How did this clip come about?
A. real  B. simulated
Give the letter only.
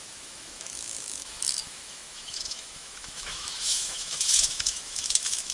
B